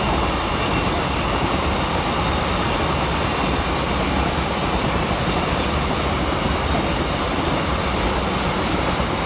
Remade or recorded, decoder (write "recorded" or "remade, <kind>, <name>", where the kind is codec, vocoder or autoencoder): recorded